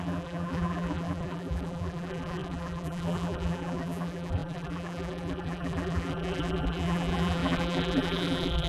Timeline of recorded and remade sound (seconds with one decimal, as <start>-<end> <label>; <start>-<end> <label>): 0.0-8.7 remade